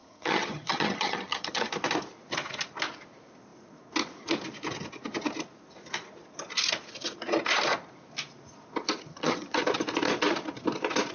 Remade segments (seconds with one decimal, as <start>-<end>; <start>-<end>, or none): 0.0-1.7; 9.1-9.6